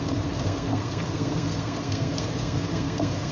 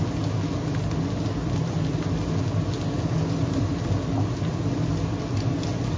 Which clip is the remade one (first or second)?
first